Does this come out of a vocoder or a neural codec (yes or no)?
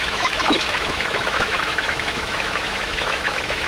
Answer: yes